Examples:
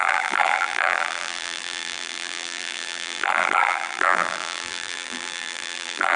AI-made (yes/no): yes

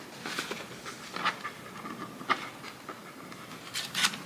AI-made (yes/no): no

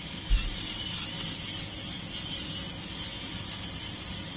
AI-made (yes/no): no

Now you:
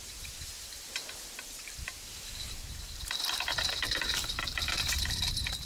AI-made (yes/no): yes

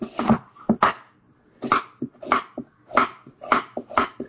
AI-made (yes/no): no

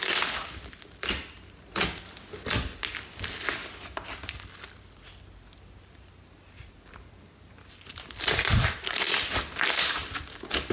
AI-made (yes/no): no